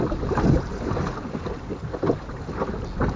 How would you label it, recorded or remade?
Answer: recorded